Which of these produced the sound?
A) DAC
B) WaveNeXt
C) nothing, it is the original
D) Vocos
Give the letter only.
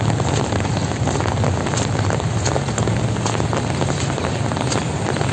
C